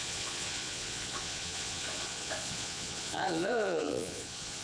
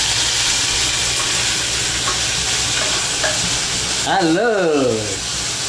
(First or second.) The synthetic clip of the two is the first